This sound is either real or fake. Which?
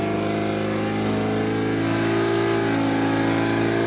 real